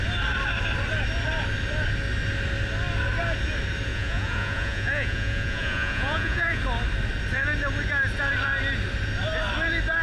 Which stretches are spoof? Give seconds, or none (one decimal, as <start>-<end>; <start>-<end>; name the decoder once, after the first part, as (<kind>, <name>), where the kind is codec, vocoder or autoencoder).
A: 3.9-6.6 (vocoder, Vocos)

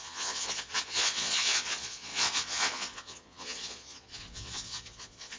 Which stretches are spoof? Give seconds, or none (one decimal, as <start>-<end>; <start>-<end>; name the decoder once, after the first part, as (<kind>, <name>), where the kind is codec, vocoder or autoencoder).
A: 0.0-5.4 (vocoder, Vocos)

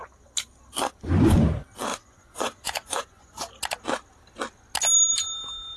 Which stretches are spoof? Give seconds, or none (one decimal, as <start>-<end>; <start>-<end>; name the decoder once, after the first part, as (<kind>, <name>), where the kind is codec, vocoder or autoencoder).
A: 1.9-3.5 (vocoder, Vocos)

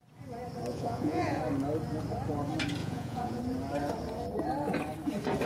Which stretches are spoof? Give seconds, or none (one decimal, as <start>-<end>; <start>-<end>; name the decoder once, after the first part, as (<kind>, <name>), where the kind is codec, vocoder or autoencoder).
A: 0.7-1.4 (vocoder, Vocos); 2.8-3.4

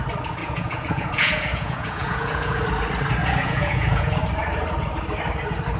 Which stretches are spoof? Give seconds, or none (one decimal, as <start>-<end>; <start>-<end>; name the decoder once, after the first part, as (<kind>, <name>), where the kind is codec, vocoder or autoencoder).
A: 0.4-2.6 (vocoder, Vocos); 3.2-4.2